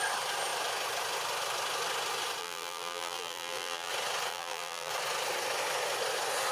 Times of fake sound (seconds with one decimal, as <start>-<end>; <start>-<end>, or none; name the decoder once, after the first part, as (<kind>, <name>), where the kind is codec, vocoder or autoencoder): 2.4-3.9 (vocoder, BigVGAN v2); 4.3-4.9